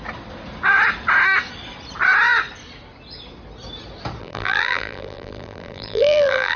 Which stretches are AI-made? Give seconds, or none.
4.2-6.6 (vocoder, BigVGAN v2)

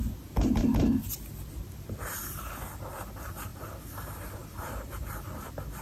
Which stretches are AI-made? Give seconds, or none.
none

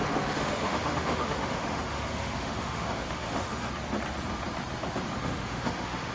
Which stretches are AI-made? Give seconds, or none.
0.0-3.7 (autoencoder, DAC-VAE); 5.2-6.1

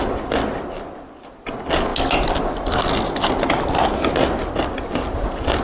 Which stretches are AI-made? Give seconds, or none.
none

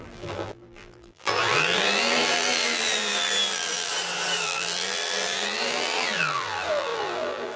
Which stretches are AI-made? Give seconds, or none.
0.0-3.9 (vocoder, BigVGAN v2); 4.4-7.6

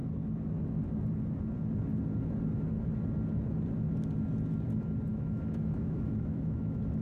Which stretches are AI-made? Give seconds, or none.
5.1-7.0 (autoencoder, DAC-VAE)